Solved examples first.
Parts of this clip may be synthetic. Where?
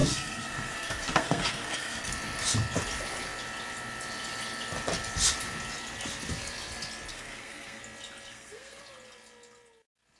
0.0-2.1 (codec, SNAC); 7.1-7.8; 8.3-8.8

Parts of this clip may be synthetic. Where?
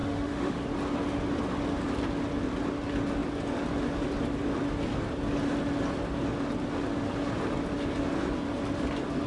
0.0-0.6 (autoencoder, DAC-VAE)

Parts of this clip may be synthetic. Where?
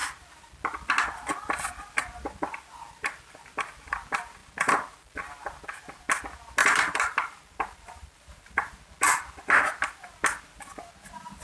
6.6-8.8 (vocoder, BigVGAN v2)